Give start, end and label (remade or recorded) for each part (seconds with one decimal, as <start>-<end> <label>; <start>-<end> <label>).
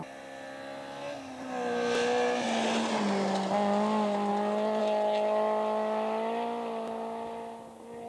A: 0.0-8.1 recorded